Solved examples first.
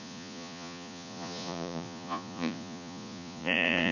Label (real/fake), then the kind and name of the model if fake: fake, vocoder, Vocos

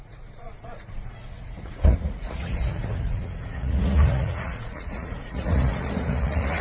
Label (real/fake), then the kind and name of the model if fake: fake, vocoder, Vocos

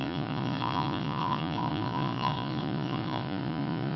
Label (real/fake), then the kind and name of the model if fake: fake, vocoder, Vocos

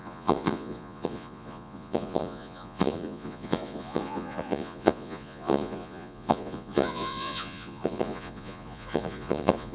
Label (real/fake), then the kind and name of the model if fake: fake, vocoder, Vocos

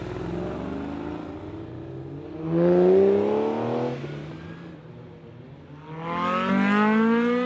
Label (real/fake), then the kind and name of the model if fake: real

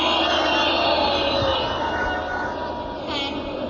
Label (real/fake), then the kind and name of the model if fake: real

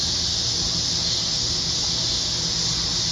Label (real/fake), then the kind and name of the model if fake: real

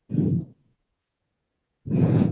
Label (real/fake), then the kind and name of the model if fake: fake, vocoder, Vocos